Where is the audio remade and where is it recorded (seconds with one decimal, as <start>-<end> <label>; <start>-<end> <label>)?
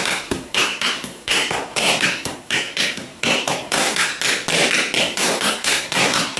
0.0-4.1 remade; 4.1-5.0 recorded; 5.0-6.4 remade